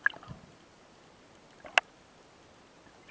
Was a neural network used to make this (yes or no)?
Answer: no